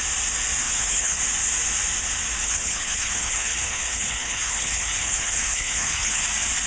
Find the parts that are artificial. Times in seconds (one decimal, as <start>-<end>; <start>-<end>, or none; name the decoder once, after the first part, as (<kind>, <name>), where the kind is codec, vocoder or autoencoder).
0.6-1.2 (codec, HILCodec); 2.4-6.2